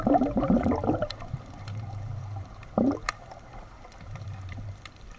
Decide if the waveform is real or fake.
fake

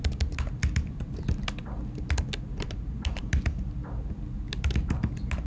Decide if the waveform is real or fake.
real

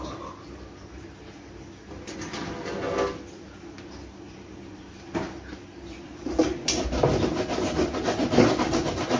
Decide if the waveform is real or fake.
real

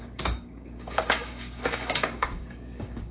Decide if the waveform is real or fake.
fake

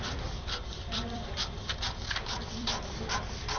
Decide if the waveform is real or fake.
fake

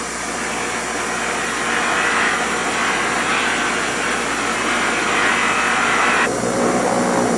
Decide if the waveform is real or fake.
real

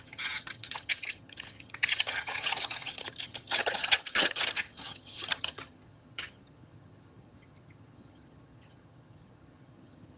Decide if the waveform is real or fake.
fake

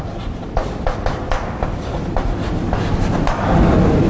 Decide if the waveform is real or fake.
real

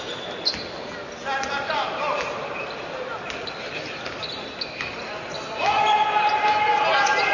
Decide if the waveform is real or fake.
real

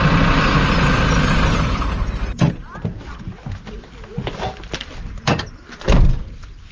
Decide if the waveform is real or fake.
real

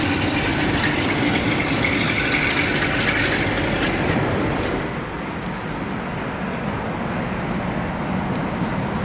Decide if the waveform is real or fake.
real